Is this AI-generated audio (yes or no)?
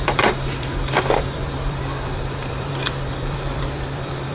yes